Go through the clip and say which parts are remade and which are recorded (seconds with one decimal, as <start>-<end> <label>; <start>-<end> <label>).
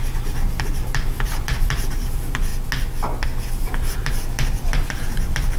0.0-2.5 remade; 2.5-3.4 recorded; 3.4-5.6 remade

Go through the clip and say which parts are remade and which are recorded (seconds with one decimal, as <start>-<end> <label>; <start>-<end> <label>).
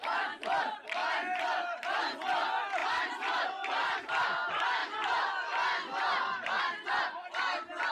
0.0-1.0 recorded; 1.0-2.0 remade; 2.0-2.8 recorded; 2.8-4.1 remade; 4.1-7.9 recorded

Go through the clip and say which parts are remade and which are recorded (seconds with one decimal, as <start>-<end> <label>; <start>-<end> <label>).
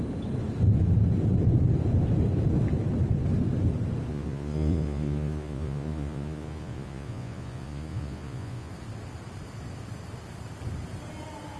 0.0-4.1 recorded; 4.1-8.7 remade; 8.7-11.6 recorded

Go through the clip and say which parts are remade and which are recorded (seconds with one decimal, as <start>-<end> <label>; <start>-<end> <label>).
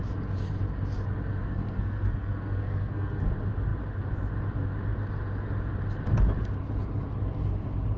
0.0-1.3 recorded; 1.3-3.3 remade; 3.3-8.0 recorded